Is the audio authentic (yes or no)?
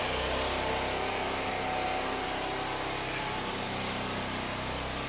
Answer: yes